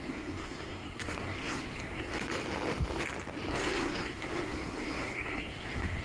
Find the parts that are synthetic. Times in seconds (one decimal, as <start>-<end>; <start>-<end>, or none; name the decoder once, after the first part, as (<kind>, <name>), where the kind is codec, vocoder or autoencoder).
0.0-2.3 (codec, SNAC); 3.5-6.0